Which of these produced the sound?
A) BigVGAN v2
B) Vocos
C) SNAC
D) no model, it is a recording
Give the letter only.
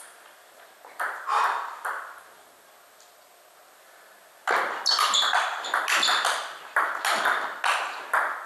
D